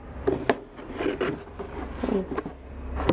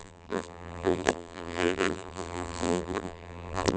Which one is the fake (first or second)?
second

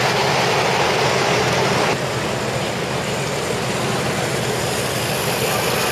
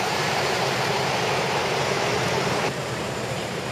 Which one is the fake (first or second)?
second